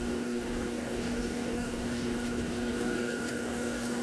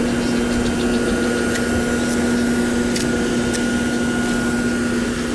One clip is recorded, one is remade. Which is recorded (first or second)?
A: second